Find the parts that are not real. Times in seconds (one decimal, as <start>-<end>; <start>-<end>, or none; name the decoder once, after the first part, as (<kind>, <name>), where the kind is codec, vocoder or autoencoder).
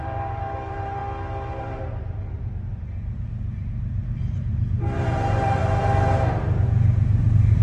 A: 0.0-1.0 (vocoder, BigVGAN v2); 1.6-5.6; 6.4-7.6